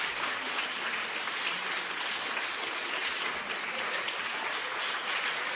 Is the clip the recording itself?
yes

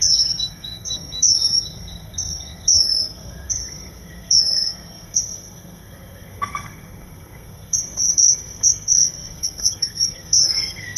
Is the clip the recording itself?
no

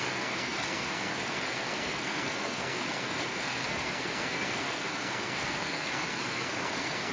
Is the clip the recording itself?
no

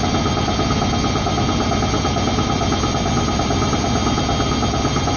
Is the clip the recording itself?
yes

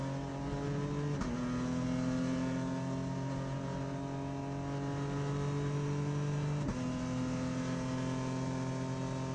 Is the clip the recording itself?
yes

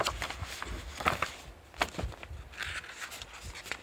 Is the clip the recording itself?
yes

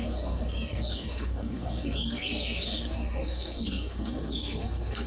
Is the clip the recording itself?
no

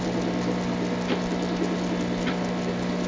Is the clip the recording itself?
yes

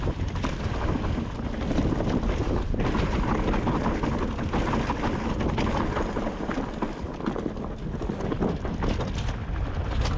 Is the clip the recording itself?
yes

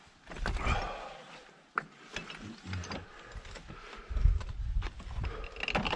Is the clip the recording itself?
yes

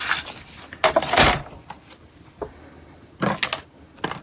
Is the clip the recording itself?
yes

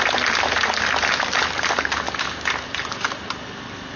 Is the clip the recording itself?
yes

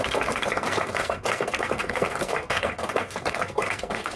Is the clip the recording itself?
no